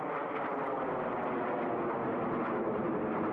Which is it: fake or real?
real